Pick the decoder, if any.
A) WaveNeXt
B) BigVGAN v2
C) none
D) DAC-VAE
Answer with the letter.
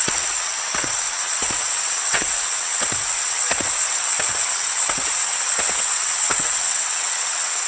A